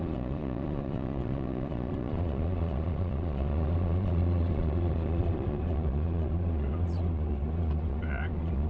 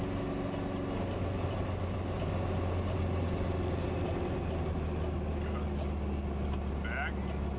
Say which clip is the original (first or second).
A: second